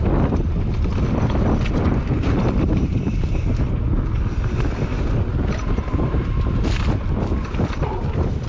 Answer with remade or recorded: recorded